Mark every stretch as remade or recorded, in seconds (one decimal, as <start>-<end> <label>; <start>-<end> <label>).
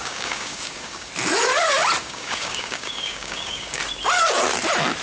0.0-1.1 remade; 1.1-2.0 recorded; 2.0-3.8 remade; 3.8-5.0 recorded